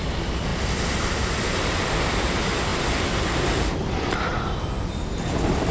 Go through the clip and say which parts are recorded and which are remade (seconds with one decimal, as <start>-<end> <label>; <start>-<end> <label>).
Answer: 0.0-5.7 recorded